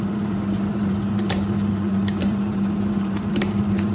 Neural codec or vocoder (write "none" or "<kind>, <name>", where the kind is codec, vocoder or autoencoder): vocoder, BigVGAN v2